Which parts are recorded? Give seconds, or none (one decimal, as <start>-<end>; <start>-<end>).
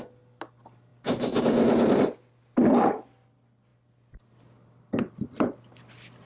0.0-6.3